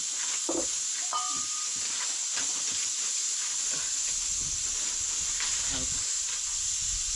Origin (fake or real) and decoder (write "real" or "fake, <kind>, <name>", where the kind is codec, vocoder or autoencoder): real